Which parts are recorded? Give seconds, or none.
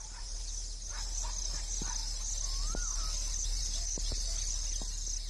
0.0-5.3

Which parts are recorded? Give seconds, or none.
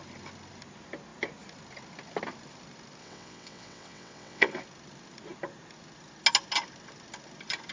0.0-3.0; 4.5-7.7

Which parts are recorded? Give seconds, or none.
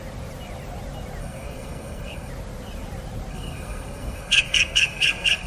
0.0-1.2; 2.3-3.3